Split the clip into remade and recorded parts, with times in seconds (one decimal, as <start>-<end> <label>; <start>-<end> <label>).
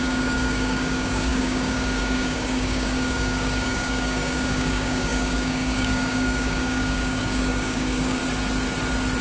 0.0-8.2 remade; 8.2-9.2 recorded